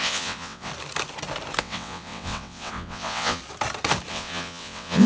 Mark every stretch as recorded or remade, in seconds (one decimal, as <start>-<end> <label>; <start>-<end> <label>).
0.0-0.7 remade; 0.7-1.6 recorded; 1.6-3.4 remade; 3.4-4.1 recorded; 4.1-5.1 remade